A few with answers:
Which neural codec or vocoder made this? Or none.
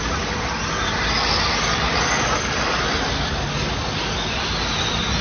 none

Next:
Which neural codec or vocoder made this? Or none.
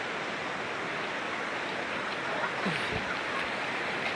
none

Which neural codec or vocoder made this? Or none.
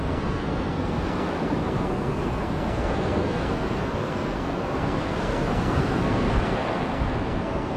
codec, SNAC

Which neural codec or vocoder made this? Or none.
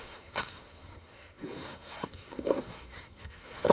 codec, SNAC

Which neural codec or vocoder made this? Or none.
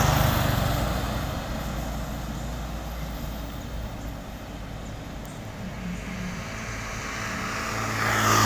none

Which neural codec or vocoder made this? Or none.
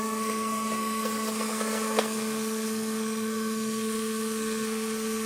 codec, SNAC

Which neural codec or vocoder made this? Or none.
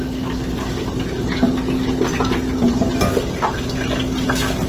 none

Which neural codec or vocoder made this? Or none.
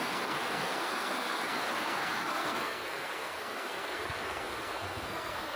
codec, SNAC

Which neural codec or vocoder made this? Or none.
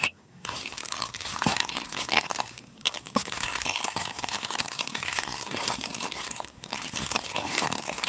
codec, SNAC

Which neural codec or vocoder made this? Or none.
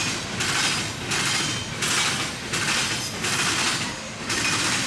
none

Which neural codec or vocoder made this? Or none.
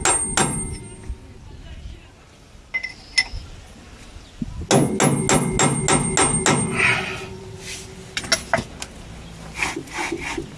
none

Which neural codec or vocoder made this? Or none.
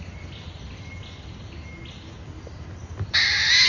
none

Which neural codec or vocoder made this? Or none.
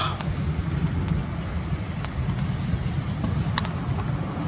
none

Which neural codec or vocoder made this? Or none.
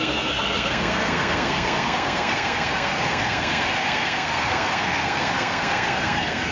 codec, SNAC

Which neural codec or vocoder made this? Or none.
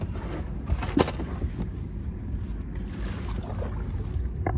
none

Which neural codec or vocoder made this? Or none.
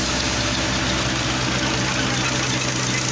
none